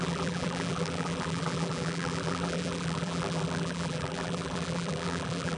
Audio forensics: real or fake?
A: fake